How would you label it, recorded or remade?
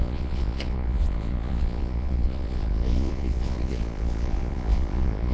remade